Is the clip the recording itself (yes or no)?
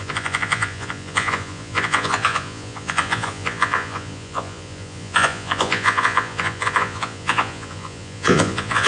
no